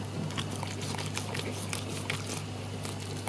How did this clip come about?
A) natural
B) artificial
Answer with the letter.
A